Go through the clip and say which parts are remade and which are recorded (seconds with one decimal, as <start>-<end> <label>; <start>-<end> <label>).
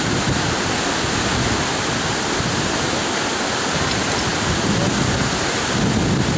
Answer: 0.0-6.4 recorded